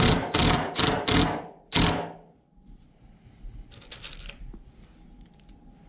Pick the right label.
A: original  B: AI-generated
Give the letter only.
A